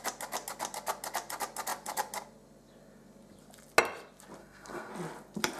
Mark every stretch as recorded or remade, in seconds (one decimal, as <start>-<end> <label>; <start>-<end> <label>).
0.0-4.4 recorded; 4.4-4.9 remade; 4.9-5.6 recorded